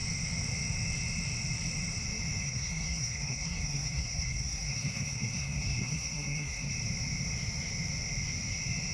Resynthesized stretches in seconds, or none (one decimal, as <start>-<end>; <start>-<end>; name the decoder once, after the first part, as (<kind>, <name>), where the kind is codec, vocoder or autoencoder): 2.4-6.7 (codec, SNAC)

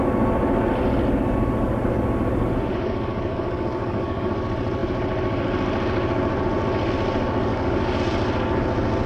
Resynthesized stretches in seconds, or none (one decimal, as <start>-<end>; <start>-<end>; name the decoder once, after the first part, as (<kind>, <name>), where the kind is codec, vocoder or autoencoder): 2.7-4.3 (codec, DAC); 7.5-8.0

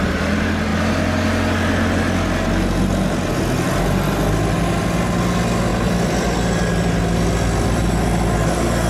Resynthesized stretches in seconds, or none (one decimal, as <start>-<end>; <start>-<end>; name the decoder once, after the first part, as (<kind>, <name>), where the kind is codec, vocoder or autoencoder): 5.7-7.9 (vocoder, BigVGAN v2)

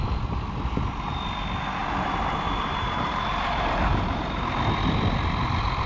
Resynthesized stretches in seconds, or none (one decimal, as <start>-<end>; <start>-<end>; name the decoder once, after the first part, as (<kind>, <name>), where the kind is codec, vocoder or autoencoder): 1.8-4.6 (vocoder, BigVGAN v2)

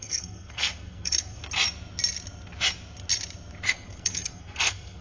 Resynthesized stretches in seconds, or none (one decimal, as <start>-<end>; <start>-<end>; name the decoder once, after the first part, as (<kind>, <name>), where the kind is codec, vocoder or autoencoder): 0.0-1.4 (codec, SNAC); 3.7-5.0

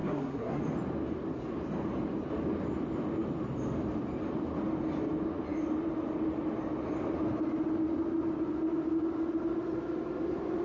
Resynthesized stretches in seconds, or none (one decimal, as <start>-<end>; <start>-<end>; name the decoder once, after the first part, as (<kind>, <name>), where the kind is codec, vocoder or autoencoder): 0.0-0.6 (codec, SNAC)

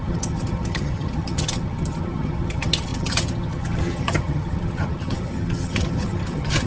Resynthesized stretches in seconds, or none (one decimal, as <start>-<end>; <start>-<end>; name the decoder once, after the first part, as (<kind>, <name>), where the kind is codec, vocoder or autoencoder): 0.0-6.7 (vocoder, HiFi-GAN)

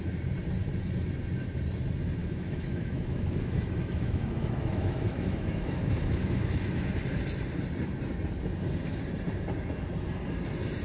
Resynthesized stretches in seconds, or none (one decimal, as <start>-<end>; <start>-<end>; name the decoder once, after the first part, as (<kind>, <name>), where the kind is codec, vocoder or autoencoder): 2.2-6.9 (autoencoder, DAC-VAE)